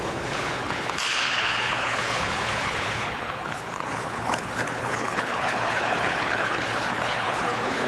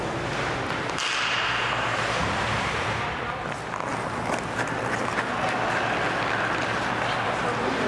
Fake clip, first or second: first